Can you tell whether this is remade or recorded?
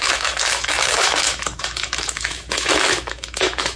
remade